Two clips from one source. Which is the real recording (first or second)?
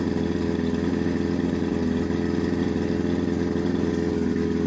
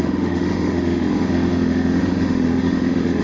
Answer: first